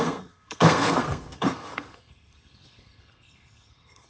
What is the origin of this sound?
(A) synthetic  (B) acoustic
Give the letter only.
A